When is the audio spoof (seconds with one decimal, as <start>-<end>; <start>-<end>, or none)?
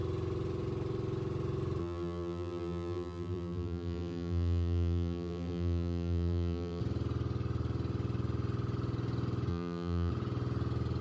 1.8-6.8; 9.5-10.1